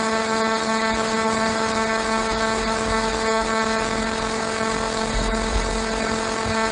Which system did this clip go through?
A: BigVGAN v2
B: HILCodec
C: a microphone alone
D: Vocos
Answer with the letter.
B